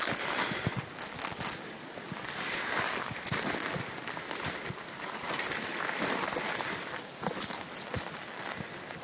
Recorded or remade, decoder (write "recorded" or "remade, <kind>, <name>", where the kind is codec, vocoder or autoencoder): recorded